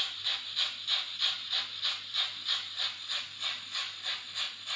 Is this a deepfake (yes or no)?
no